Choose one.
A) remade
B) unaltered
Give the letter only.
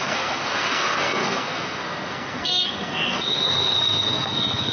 A